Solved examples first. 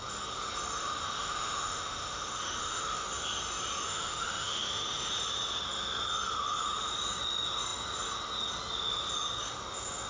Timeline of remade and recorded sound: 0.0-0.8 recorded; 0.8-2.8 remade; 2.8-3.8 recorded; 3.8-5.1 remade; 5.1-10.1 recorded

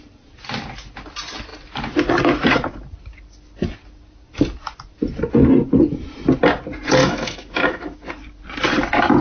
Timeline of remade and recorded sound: 0.0-7.0 recorded; 7.0-8.1 remade; 8.1-9.2 recorded